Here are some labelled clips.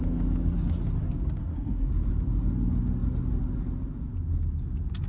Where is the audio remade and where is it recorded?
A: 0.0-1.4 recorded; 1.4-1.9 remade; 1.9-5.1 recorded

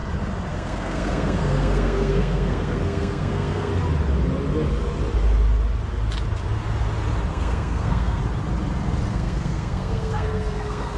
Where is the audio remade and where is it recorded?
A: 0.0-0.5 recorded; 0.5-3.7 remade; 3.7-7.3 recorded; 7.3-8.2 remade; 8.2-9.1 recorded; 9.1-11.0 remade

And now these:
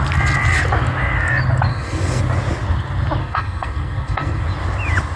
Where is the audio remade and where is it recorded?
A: 0.0-1.7 recorded; 1.7-2.2 remade; 2.2-3.2 recorded; 3.2-4.4 remade; 4.4-5.2 recorded